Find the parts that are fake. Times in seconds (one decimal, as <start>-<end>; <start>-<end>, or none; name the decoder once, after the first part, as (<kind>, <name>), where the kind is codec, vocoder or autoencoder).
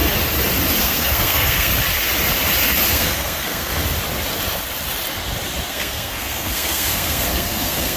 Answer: 0.8-1.7 (codec, SNAC); 2.9-3.8; 5.7-8.0